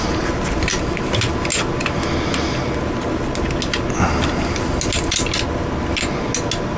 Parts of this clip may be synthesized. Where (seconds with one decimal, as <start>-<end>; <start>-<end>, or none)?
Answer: none